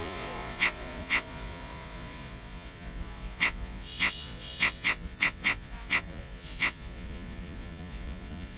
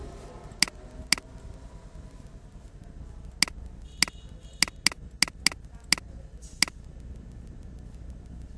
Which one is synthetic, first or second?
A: first